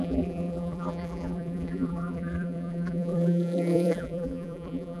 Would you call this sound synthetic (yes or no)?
yes